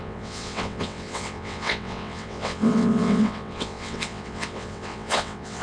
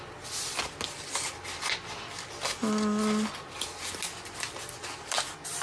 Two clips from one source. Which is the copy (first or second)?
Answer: first